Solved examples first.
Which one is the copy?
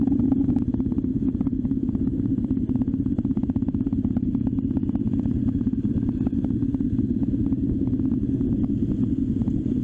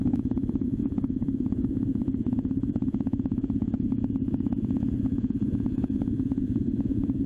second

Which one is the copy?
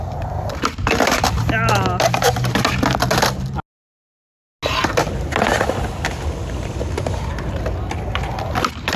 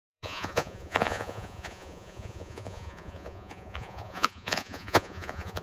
second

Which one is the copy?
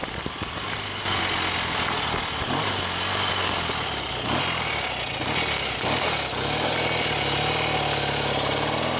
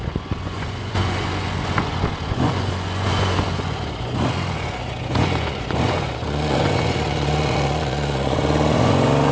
second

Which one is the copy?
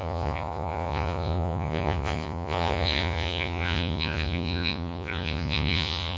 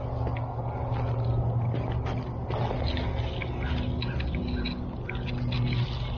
first